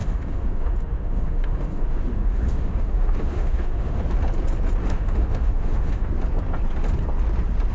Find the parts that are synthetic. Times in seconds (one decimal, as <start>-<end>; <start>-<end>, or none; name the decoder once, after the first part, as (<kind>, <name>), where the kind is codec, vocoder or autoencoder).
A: 0.0-4.0 (autoencoder, DAC-VAE); 4.8-6.1